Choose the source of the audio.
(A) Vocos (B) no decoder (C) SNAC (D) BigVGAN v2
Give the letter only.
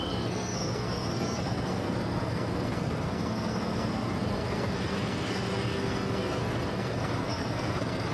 C